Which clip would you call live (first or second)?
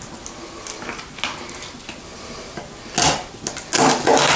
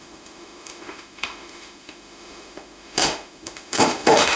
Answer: first